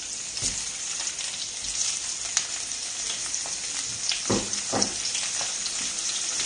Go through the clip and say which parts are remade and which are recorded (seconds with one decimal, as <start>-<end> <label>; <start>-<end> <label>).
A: 0.0-6.5 recorded